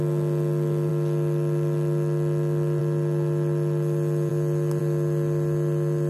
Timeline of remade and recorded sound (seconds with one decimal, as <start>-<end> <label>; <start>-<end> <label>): 0.0-6.1 recorded